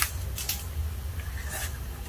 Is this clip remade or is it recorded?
recorded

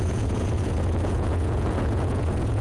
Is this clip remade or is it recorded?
remade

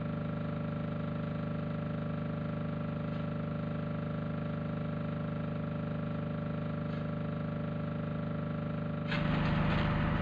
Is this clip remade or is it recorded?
recorded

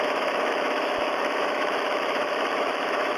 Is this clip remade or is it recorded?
remade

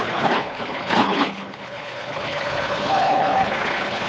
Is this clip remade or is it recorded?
remade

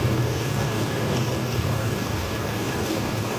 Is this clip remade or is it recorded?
remade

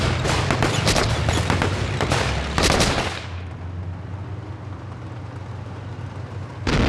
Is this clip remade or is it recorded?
recorded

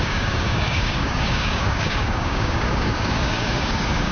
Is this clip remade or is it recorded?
remade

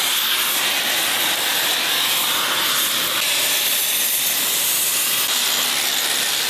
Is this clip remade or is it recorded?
recorded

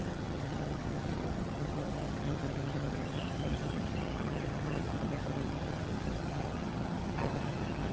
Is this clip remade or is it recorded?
remade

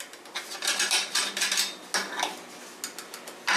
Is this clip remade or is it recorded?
recorded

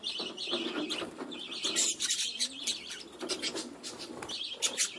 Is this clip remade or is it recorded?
recorded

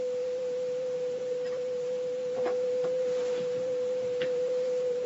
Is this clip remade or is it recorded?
remade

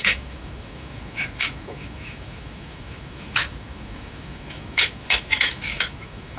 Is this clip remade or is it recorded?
remade